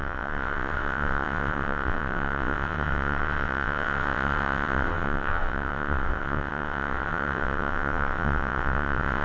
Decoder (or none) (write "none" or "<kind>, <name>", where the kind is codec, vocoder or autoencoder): vocoder, WaveNeXt